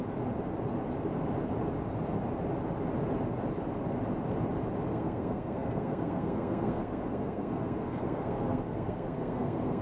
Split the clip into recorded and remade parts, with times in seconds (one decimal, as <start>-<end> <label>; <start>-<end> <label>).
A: 0.0-4.9 recorded; 4.9-9.8 remade